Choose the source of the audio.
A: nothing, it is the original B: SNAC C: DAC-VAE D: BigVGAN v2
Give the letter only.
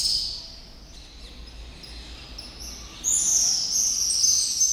A